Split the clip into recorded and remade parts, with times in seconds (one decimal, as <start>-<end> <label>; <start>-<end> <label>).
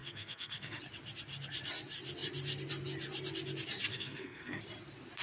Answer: 0.0-0.8 remade; 0.8-3.9 recorded; 3.9-4.6 remade; 4.6-5.2 recorded